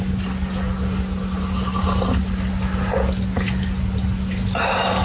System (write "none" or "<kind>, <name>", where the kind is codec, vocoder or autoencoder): none